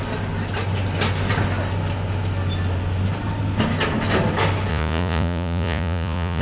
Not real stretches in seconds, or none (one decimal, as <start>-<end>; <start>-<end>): 4.7-6.4